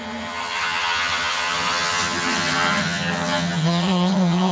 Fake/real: fake